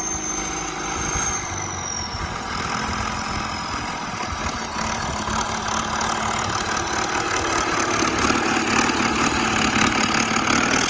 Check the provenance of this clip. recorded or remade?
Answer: recorded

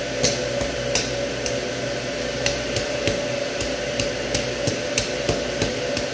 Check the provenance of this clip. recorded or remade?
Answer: recorded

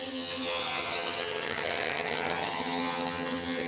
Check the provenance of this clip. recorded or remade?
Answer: remade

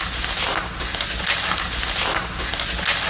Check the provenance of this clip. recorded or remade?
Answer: recorded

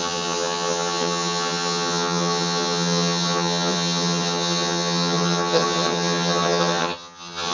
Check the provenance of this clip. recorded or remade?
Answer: remade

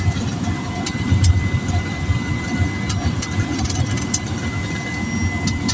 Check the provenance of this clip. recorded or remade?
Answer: recorded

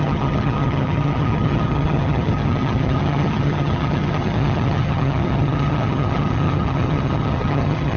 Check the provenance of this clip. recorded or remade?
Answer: remade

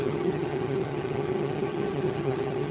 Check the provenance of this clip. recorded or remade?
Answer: remade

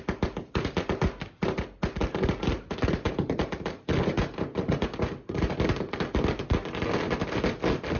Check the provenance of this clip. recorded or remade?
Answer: recorded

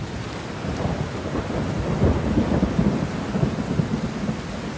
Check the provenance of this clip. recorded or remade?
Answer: recorded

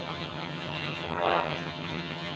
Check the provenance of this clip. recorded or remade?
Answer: remade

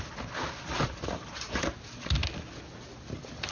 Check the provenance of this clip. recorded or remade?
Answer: recorded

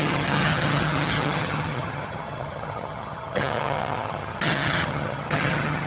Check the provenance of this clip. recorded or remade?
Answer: remade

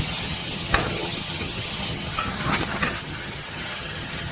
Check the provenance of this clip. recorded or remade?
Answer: remade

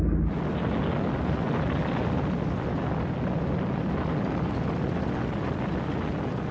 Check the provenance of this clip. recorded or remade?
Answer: recorded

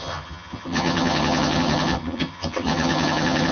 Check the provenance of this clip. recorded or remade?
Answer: remade